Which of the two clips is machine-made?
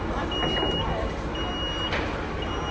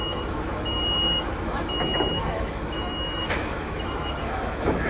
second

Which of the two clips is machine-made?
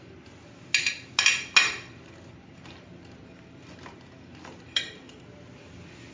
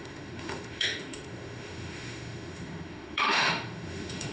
second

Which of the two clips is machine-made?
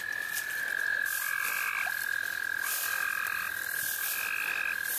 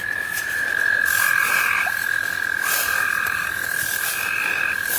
second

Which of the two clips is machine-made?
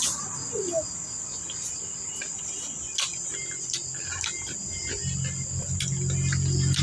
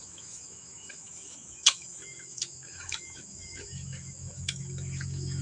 second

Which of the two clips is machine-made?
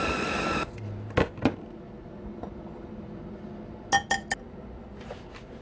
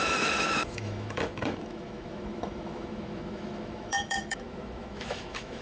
second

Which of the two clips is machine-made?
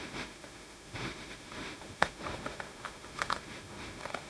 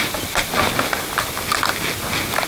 first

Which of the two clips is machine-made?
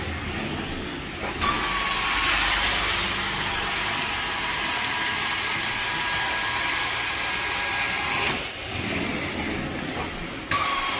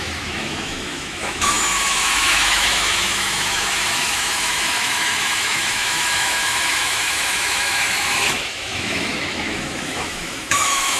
second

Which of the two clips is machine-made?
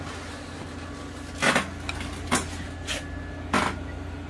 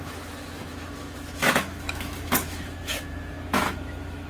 second